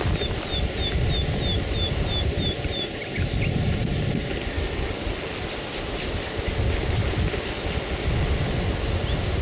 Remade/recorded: recorded